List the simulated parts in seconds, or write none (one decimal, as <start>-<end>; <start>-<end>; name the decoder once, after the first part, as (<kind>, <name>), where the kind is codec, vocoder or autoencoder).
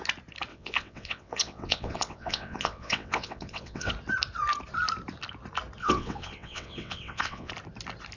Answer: 0.5-3.9 (vocoder, WaveNeXt); 5.8-7.5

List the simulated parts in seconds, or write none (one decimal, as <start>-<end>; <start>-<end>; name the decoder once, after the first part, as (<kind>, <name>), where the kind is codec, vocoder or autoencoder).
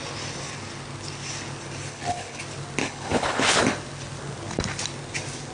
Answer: 1.9-2.4 (codec, HILCodec); 2.8-3.6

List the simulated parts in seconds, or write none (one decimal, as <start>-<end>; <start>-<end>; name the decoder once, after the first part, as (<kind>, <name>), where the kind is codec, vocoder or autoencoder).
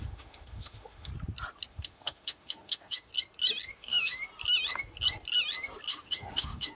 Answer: 0.0-1.1 (autoencoder, DAC-VAE); 1.7-3.1; 3.7-4.2; 5.9-6.7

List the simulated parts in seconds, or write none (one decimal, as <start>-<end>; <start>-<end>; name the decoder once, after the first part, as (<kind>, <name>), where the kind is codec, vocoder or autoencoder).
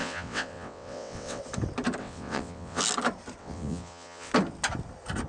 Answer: 0.0-1.4 (vocoder, WaveNeXt); 2.0-2.8; 3.4-4.3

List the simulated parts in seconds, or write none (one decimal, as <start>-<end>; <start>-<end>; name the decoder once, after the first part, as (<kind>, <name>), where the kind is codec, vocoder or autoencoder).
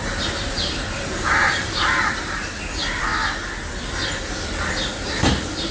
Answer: 0.0-3.1 (vocoder, BigVGAN v2); 5.2-5.7